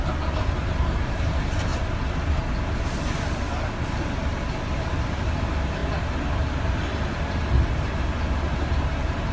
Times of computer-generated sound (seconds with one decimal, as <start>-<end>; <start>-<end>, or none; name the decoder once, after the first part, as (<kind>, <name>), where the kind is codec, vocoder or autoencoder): 0.0-1.7 (vocoder, BigVGAN v2); 4.8-5.8; 6.6-9.3